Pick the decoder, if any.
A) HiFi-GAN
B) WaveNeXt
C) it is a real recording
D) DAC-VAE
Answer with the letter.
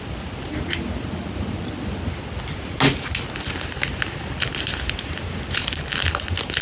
C